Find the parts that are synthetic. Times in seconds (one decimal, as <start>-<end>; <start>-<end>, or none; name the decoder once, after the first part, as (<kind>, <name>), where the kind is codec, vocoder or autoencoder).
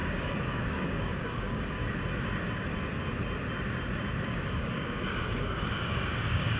0.0-1.8 (codec, DAC); 4.3-6.6